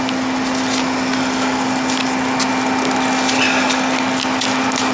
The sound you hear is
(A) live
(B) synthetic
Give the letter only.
A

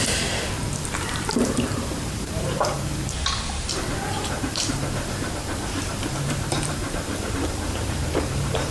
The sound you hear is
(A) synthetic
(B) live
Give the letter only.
A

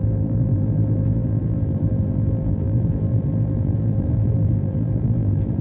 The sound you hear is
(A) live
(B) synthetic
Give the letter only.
B